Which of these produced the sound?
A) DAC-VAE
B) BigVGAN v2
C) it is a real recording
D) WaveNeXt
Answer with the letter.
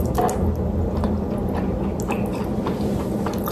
C